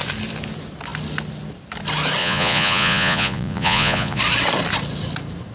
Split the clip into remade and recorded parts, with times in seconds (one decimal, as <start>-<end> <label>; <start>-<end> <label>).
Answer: 0.0-2.2 recorded; 2.2-4.2 remade; 4.2-5.5 recorded